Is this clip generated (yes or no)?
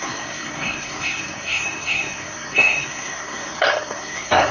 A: yes